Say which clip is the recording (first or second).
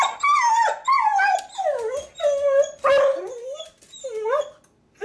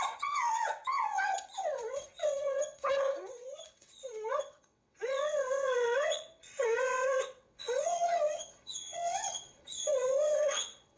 first